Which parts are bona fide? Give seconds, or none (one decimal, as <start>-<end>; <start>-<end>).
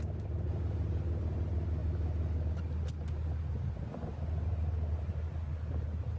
0.0-1.8; 2.6-6.2